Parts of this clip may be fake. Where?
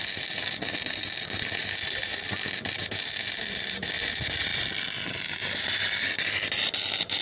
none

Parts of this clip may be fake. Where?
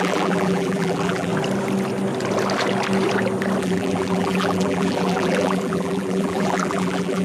0.0-1.3 (vocoder, BigVGAN v2); 3.6-7.2